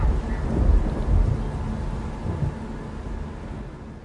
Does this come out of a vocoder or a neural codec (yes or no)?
no